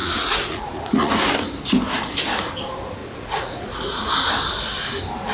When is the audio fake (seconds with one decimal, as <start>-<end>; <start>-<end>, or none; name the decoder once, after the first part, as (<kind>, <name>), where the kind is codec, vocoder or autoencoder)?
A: 0.0-1.1 (vocoder, Vocos); 3.0-4.1